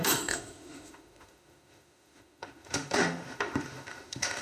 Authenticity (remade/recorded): remade